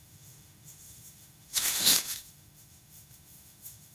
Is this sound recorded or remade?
remade